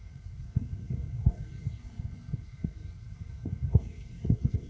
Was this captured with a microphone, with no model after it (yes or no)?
no